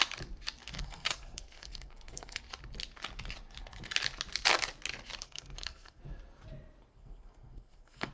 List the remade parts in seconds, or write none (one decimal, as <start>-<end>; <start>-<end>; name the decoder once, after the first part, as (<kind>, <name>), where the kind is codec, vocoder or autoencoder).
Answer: 0.6-2.4 (codec, SNAC); 5.2-6.0; 6.9-8.1